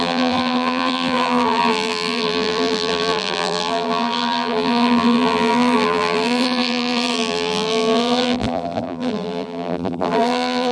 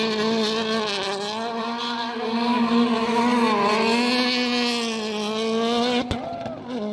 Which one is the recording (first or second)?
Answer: second